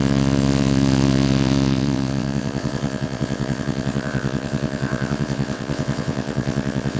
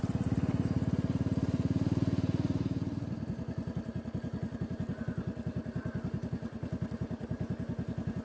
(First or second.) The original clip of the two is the second